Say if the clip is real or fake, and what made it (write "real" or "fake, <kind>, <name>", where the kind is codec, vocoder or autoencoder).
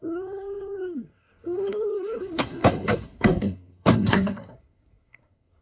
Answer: fake, codec, SNAC